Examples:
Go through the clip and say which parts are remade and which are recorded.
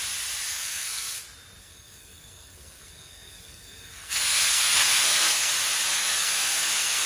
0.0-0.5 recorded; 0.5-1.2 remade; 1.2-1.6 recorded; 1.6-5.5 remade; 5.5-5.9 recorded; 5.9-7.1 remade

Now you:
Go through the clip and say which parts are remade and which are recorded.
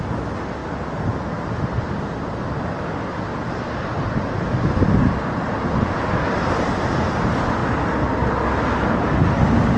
0.0-9.8 recorded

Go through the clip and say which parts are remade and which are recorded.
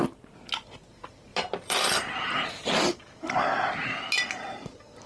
0.0-1.3 recorded; 1.3-4.0 remade; 4.0-5.1 recorded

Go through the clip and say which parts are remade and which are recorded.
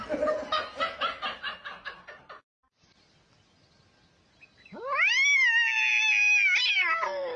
0.0-7.4 recorded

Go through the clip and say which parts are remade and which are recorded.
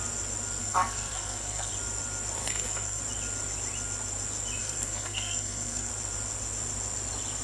0.0-0.6 recorded; 0.6-1.7 remade; 1.7-2.4 recorded; 2.4-3.0 remade; 3.0-4.6 recorded; 4.6-5.9 remade; 5.9-7.4 recorded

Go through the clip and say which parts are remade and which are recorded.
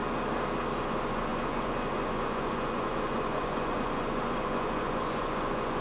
0.0-0.8 recorded; 0.8-5.8 remade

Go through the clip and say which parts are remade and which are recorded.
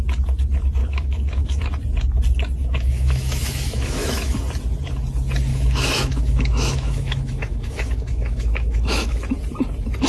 0.0-0.8 recorded; 0.8-1.6 remade; 1.6-2.6 recorded; 2.6-4.4 remade; 4.4-5.5 recorded; 5.5-9.2 remade; 9.2-10.1 recorded